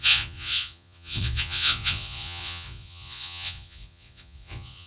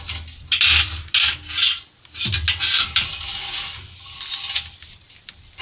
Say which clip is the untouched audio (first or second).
second